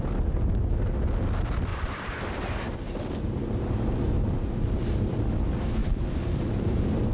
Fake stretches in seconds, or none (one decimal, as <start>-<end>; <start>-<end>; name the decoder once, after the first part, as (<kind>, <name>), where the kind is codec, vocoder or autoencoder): 1.7-3.2 (vocoder, BigVGAN v2); 5.8-7.1